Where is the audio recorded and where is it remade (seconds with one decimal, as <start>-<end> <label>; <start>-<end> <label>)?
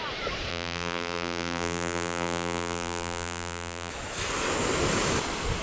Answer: 0.0-0.5 recorded; 0.5-3.9 remade; 3.9-5.6 recorded